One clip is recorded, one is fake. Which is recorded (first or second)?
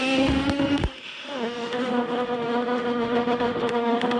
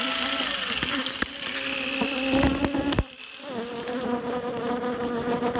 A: second